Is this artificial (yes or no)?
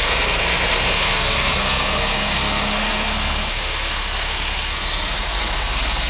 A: yes